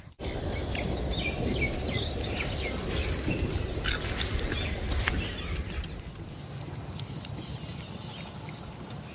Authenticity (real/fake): real